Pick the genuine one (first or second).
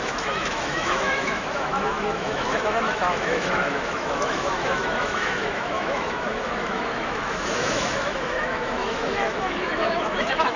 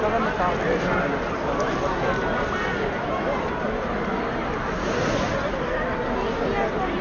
second